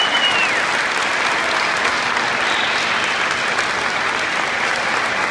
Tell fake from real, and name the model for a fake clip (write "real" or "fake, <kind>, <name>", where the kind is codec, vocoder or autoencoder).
real